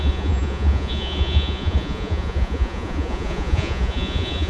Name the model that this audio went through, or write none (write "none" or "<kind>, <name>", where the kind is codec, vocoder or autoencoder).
vocoder, Vocos